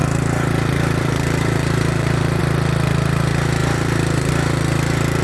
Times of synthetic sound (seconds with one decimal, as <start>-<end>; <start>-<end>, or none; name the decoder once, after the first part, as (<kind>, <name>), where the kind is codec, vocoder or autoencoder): 0.0-2.4 (vocoder, BigVGAN v2); 3.6-4.3